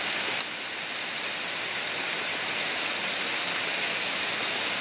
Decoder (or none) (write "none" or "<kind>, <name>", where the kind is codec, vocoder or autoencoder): none